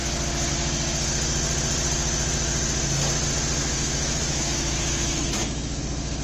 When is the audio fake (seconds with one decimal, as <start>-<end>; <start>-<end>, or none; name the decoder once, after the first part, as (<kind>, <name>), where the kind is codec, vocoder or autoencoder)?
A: 3.6-5.8 (autoencoder, DAC-VAE)